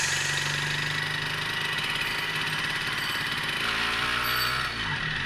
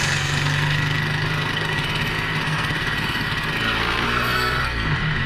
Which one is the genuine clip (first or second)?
first